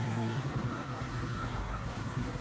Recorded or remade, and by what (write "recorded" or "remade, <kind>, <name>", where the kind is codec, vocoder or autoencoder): remade, codec, SNAC